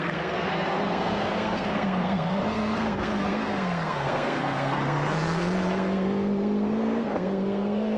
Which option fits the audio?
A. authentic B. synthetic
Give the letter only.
B